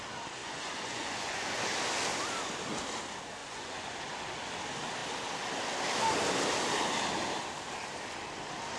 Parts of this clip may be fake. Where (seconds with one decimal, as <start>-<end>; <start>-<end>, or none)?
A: 0.4-1.6; 3.4-3.9